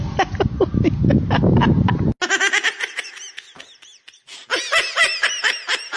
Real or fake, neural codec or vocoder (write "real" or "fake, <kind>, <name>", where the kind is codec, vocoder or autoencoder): real